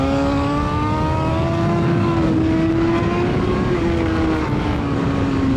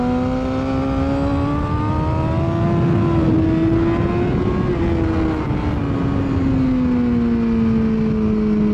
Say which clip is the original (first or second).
second